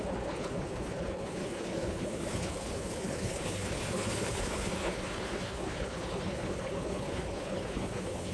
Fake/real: fake